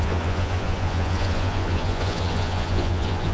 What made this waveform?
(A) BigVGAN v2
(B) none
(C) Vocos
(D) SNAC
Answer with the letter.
C